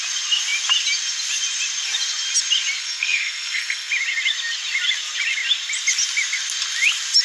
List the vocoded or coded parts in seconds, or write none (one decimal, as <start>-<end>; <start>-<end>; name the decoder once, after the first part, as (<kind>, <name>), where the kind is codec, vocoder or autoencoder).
2.8-3.9 (codec, SNAC)